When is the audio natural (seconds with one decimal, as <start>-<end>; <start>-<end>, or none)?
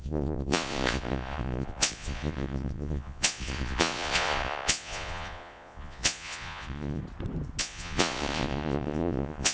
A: 7.0-7.6